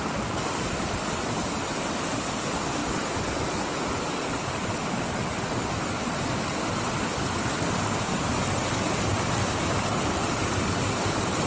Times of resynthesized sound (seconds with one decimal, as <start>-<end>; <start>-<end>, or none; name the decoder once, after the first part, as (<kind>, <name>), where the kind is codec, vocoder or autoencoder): none